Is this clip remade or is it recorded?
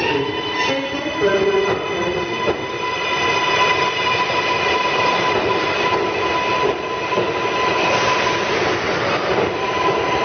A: recorded